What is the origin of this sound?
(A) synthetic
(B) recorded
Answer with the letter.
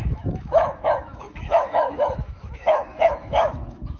A